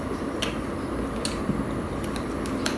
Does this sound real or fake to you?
real